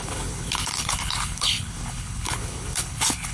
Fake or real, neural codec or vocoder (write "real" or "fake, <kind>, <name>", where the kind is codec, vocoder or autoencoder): fake, codec, HILCodec